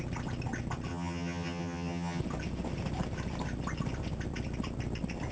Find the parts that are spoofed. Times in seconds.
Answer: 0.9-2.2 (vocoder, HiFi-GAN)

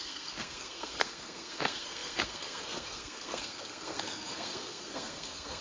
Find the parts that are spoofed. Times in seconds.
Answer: 0.0-5.6 (codec, SNAC)